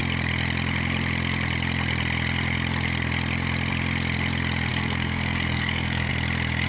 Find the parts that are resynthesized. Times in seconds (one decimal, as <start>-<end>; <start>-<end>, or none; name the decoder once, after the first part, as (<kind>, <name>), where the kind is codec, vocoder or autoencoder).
4.7-6.1 (codec, DAC)